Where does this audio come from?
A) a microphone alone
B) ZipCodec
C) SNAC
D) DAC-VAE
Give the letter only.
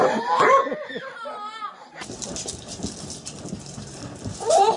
A